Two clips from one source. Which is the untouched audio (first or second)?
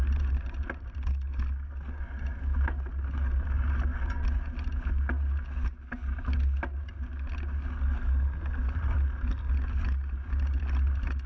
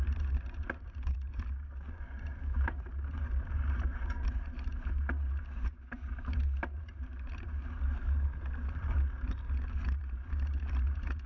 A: first